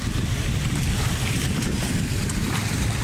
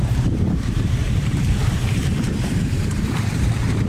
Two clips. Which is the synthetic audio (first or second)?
second